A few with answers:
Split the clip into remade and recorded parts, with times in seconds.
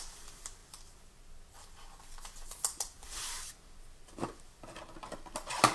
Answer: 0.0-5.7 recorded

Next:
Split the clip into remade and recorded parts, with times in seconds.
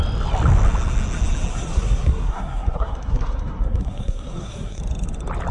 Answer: 0.0-1.5 recorded; 1.5-4.8 remade; 4.8-5.5 recorded